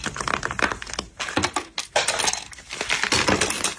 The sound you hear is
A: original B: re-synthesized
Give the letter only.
A